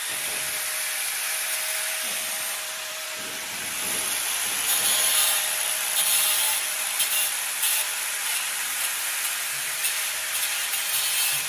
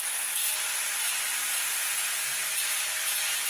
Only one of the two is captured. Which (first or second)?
second